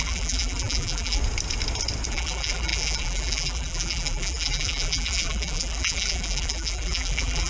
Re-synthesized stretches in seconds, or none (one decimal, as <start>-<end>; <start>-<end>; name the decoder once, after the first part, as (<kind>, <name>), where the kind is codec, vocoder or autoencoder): 0.0-1.2 (vocoder, BigVGAN v2); 2.1-7.5